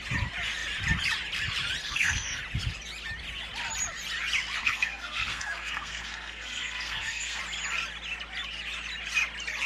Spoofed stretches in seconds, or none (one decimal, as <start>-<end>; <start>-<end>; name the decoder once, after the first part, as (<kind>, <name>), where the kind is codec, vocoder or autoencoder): 1.8-2.4 (codec, SNAC); 4.6-7.4